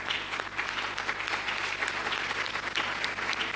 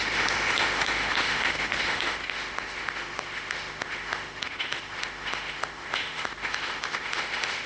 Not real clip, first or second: second